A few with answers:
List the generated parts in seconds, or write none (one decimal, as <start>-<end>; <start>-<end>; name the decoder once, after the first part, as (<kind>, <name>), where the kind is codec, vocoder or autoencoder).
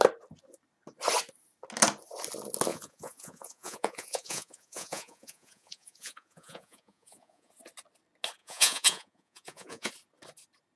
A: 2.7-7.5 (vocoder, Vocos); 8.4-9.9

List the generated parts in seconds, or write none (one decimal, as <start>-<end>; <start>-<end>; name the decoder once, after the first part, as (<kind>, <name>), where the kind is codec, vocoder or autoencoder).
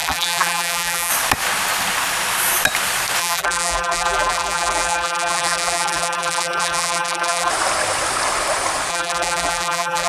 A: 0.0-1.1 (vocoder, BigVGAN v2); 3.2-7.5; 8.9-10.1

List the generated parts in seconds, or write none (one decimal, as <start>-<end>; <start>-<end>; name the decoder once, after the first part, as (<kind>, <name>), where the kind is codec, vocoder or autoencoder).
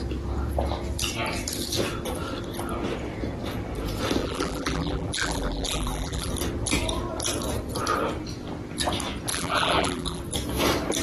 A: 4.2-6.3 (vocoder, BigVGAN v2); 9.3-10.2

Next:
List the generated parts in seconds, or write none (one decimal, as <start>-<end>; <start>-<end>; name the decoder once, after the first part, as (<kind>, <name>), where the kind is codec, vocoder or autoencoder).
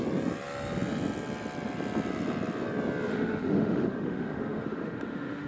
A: 3.1-5.5 (autoencoder, DAC-VAE)